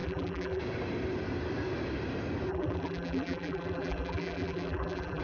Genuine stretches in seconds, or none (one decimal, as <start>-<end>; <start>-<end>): 0.6-2.5